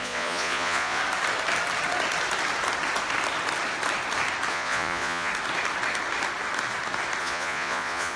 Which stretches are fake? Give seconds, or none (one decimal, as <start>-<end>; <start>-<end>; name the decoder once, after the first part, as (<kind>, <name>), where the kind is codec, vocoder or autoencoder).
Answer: 0.0-1.0 (vocoder, Vocos); 4.5-5.3; 7.2-8.2